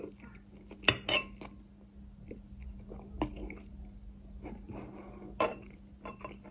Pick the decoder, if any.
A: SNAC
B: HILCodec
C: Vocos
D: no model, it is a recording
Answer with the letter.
D